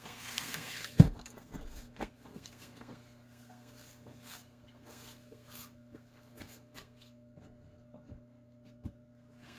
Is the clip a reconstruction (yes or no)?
yes